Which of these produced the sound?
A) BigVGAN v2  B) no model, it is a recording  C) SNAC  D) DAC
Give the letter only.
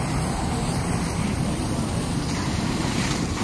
A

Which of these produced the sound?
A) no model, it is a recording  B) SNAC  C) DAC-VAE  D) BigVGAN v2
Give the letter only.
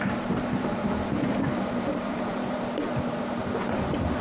D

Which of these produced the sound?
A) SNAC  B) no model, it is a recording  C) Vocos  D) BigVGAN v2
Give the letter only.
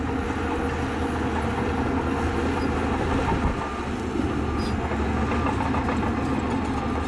B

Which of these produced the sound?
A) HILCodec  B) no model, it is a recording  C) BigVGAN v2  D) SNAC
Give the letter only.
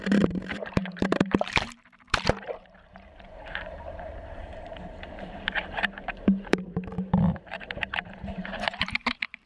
C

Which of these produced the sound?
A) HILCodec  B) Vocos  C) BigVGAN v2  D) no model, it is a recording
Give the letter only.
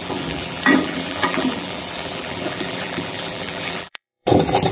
C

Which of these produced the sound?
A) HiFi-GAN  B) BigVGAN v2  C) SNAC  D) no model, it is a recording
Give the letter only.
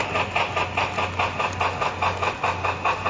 D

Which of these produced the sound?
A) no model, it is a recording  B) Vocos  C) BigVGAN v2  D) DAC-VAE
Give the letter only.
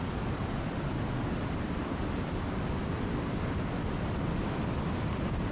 C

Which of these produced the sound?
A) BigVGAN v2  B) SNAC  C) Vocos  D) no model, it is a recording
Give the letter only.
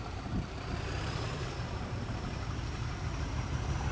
A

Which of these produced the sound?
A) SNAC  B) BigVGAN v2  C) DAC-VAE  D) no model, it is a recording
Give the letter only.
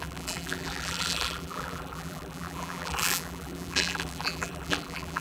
B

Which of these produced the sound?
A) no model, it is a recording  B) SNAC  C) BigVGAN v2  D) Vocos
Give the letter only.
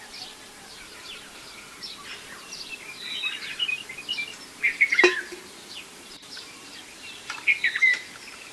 C